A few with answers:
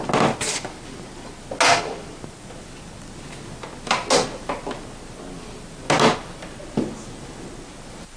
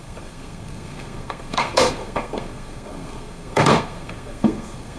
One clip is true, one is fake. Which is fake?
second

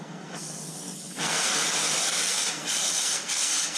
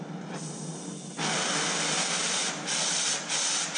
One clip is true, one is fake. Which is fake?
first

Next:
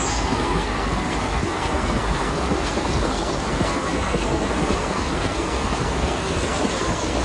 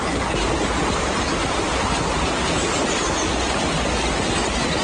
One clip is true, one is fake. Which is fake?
first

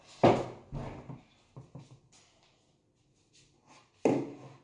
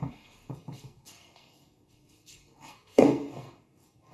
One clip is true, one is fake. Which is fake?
second